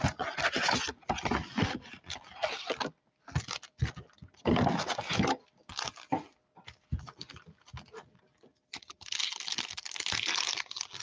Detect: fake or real real